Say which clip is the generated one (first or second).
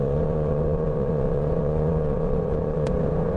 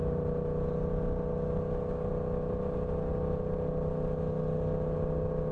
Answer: first